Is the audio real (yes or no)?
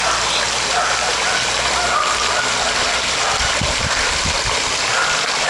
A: yes